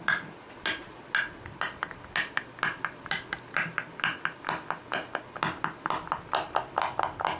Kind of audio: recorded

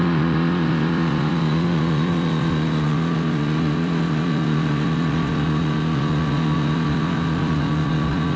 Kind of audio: remade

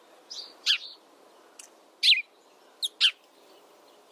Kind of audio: recorded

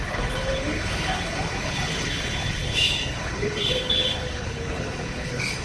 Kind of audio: remade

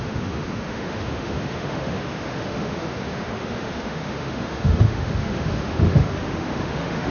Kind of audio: remade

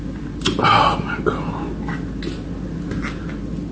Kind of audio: recorded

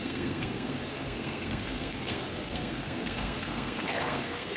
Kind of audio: remade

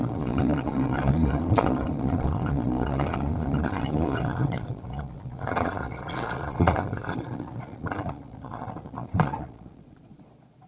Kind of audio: remade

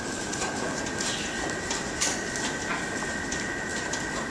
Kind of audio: recorded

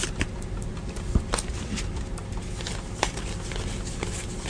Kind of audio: recorded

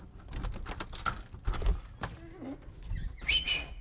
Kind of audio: recorded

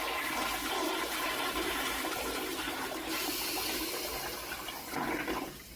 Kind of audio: remade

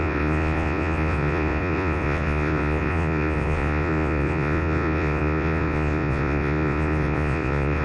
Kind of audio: remade